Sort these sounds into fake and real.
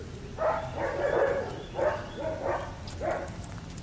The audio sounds real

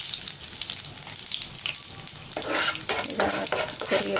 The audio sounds real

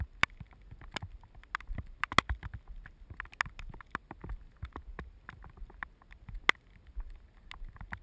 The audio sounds real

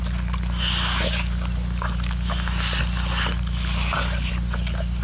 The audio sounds real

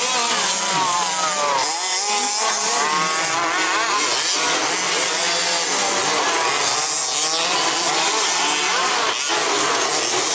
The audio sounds real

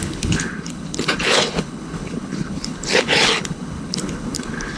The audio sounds fake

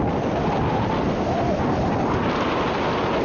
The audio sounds real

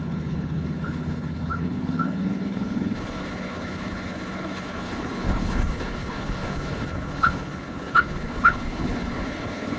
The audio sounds fake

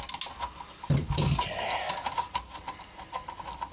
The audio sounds real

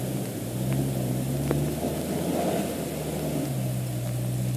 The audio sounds real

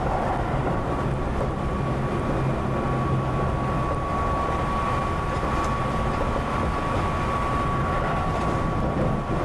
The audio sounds real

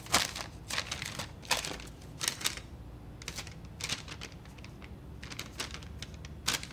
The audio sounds real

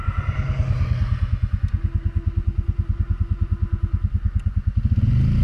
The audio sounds real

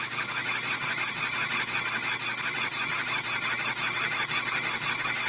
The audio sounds real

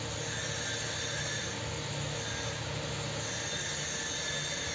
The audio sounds real